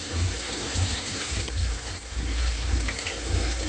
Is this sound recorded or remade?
remade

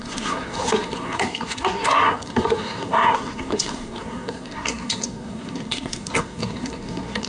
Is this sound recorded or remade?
remade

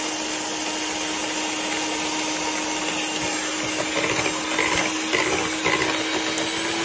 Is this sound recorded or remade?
recorded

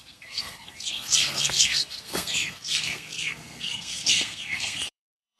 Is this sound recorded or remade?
remade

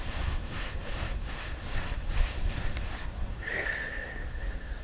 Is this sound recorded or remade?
remade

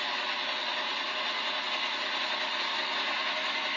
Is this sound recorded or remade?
recorded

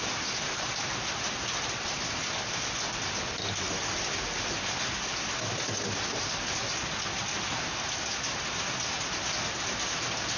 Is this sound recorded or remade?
recorded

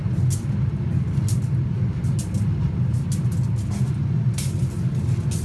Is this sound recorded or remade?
recorded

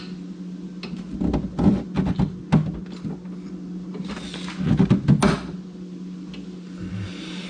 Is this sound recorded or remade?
recorded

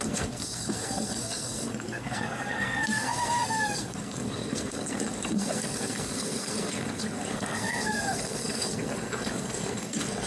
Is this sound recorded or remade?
remade